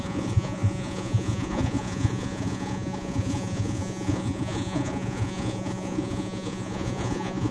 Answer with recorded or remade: remade